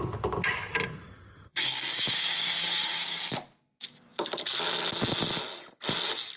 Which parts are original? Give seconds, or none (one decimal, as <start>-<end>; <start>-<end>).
0.0-1.5; 3.2-6.4